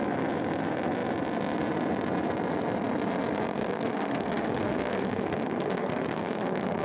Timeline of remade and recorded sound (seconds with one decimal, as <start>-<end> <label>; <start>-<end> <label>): 0.0-3.5 recorded; 3.5-6.8 remade